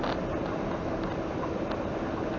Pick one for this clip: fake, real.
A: real